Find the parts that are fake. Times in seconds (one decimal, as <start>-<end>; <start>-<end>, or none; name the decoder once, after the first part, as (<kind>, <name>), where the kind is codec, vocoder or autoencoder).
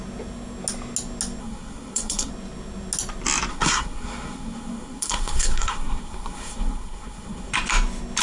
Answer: 1.4-2.3 (codec, SNAC); 3.5-7.5